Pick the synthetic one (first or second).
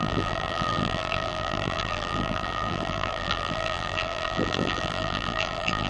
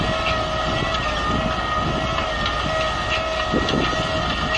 first